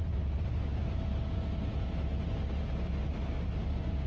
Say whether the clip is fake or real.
real